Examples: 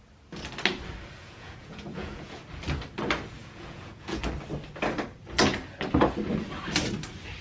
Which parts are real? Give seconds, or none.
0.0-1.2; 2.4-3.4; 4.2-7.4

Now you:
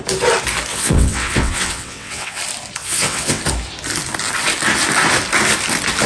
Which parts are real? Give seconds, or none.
0.0-0.7; 2.4-2.8; 3.4-6.1

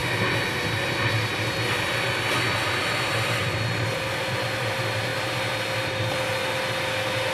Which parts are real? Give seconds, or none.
0.0-7.3

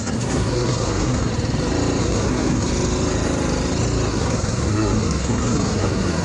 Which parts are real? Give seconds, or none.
1.3-2.0; 2.7-4.1